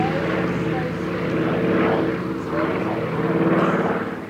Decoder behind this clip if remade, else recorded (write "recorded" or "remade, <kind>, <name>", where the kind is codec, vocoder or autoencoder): recorded